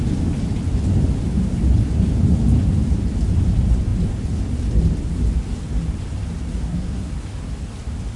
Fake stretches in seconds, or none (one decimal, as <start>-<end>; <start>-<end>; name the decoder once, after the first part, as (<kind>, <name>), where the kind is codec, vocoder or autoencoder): 6.5-7.1 (codec, SNAC)